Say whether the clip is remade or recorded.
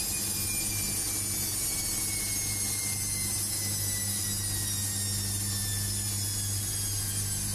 recorded